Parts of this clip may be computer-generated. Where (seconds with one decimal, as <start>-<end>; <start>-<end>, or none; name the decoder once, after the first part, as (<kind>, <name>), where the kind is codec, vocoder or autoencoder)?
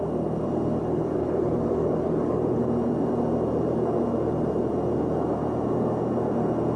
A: 0.8-2.6 (codec, DAC)